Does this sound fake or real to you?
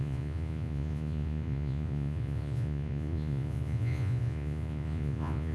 fake